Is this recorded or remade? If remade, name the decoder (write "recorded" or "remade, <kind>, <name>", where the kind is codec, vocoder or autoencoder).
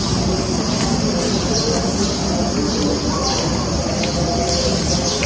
recorded